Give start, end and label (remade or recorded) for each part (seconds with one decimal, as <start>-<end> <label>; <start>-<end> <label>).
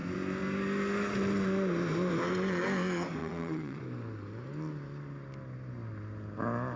0.0-3.2 recorded; 3.2-3.8 remade; 3.8-6.8 recorded